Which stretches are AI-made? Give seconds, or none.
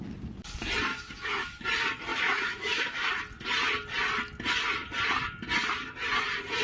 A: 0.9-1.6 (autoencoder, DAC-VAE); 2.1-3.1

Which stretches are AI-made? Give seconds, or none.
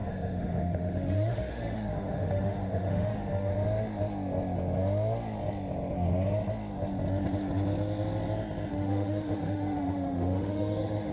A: 0.0-3.5 (autoencoder, DAC-VAE); 8.7-11.1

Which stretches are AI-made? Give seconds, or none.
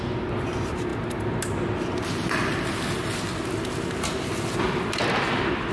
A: none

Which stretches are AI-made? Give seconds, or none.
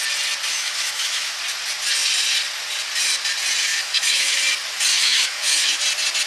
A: 0.5-1.4 (autoencoder, DAC-VAE); 3.7-4.4; 4.9-5.8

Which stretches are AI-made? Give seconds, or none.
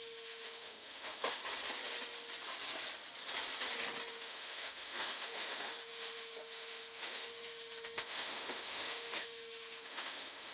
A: 0.0-1.4 (autoencoder, DAC-VAE); 4.1-10.5